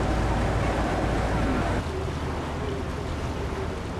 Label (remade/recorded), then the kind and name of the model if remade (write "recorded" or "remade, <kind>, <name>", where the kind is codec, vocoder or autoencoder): recorded